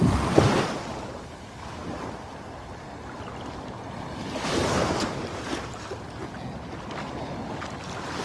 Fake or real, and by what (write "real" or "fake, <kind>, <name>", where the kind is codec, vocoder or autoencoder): real